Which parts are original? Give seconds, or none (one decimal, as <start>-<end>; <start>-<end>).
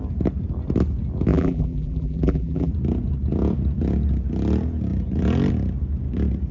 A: 0.0-1.3; 2.7-6.5